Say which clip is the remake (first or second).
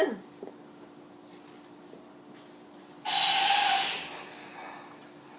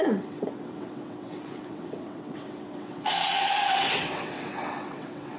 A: second